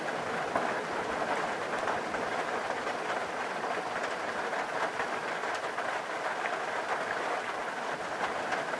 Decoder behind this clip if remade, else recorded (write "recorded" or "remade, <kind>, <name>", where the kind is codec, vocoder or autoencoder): recorded